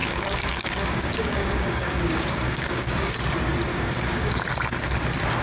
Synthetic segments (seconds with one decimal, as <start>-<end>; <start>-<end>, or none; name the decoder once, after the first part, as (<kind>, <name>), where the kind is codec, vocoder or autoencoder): 0.0-3.2 (codec, DAC); 3.7-4.3